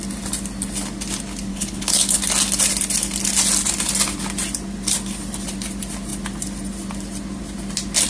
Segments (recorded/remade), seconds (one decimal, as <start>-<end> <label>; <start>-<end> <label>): 0.0-1.5 recorded; 1.5-2.2 remade; 2.2-8.1 recorded